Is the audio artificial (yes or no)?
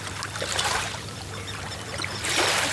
yes